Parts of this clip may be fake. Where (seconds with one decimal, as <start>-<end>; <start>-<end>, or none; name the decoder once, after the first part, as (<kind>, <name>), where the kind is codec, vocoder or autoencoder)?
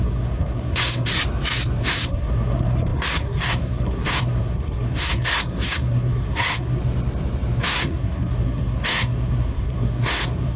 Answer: 0.0-1.1 (codec, SNAC); 1.8-6.8; 7.6-10.6